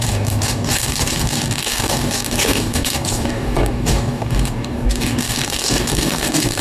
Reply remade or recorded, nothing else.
remade